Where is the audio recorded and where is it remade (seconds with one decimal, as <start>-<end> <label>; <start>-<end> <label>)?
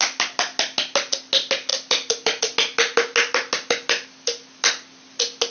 0.0-1.7 recorded; 1.7-2.4 remade; 2.4-5.5 recorded